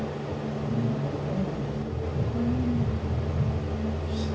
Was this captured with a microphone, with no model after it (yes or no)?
yes